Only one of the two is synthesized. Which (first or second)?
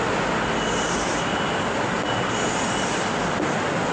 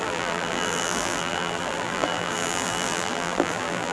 second